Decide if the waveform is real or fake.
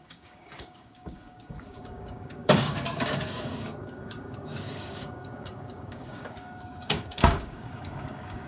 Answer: fake